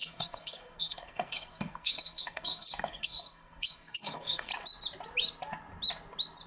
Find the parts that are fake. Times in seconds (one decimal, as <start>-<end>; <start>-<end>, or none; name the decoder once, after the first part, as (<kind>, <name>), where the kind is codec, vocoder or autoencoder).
0.0-4.5 (codec, SNAC)